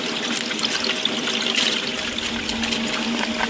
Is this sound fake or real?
real